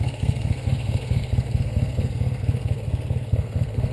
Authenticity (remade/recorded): remade